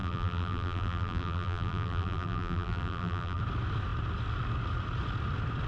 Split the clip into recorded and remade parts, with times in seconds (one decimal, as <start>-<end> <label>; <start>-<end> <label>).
0.0-3.4 remade; 3.4-5.7 recorded